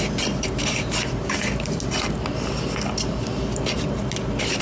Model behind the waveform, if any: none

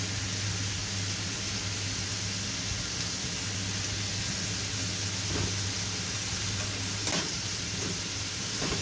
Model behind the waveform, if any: none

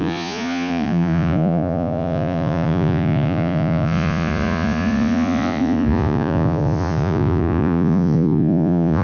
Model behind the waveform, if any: vocoder, Vocos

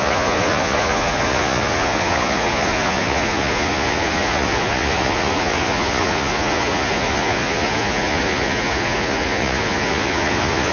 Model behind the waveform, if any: vocoder, Vocos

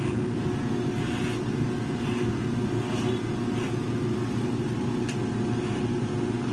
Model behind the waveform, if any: none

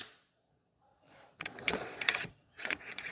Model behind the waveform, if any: vocoder, Vocos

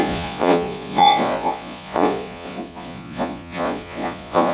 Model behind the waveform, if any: vocoder, Vocos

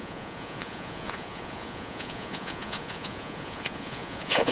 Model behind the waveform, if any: vocoder, Vocos